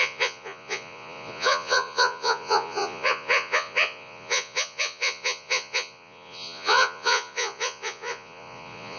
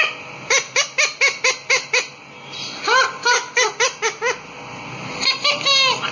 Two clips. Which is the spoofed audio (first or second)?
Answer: first